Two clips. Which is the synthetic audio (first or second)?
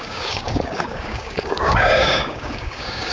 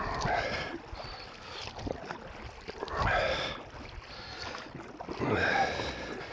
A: first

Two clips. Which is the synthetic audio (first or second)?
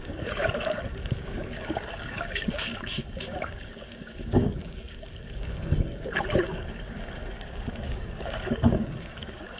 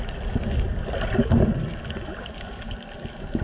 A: first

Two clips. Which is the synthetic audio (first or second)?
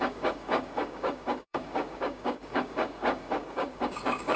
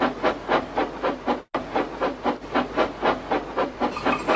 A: first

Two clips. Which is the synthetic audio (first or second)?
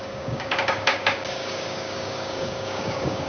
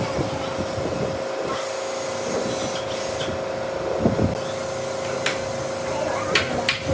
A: first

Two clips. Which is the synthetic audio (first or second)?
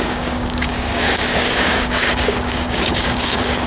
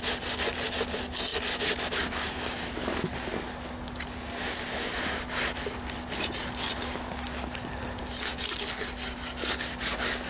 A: first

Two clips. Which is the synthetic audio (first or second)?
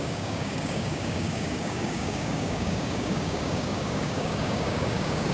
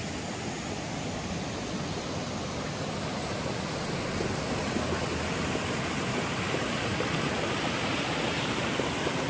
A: first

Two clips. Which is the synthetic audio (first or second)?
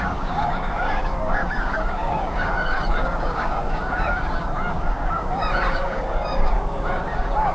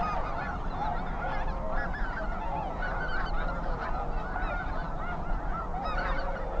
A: first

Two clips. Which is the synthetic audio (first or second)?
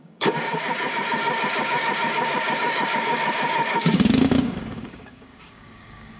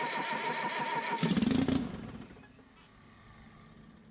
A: first